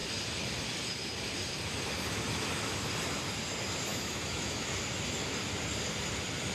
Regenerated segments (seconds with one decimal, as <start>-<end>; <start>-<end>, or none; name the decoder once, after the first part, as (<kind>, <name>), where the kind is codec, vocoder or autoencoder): 3.9-4.7 (autoencoder, DAC-VAE)